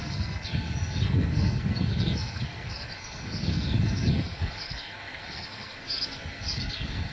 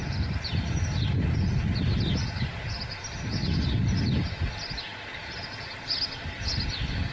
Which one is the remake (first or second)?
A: first